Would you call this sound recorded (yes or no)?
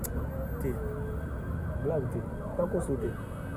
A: yes